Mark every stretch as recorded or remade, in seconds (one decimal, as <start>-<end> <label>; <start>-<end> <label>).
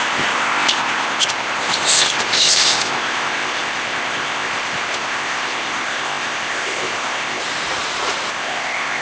0.0-7.4 remade; 7.4-8.3 recorded; 8.3-9.0 remade